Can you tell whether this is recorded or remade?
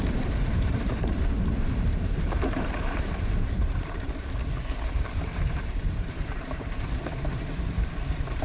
remade